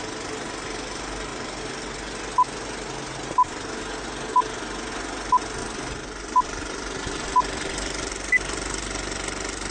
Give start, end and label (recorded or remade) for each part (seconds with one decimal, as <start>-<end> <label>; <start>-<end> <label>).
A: 0.0-5.6 recorded; 5.6-8.1 remade; 8.1-9.7 recorded